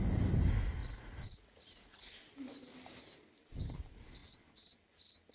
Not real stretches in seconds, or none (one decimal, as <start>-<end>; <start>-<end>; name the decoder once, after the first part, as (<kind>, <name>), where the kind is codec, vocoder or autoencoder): 0.8-2.1 (vocoder, Vocos)